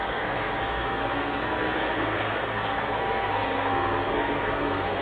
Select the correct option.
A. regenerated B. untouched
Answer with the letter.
A